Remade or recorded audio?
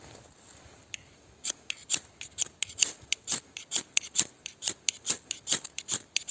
recorded